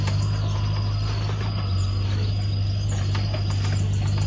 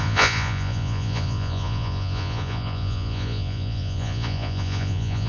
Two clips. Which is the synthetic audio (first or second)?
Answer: second